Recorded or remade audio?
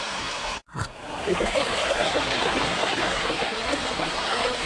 remade